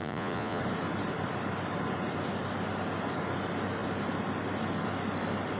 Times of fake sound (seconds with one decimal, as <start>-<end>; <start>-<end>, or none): 0.0-0.6